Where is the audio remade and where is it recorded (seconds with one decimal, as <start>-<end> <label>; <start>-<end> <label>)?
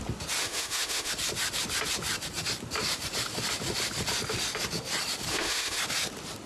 0.0-0.4 recorded; 0.4-1.1 remade; 1.1-5.3 recorded; 5.3-5.8 remade; 5.8-6.5 recorded